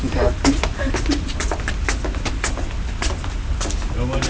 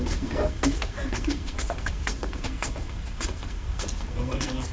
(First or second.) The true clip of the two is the first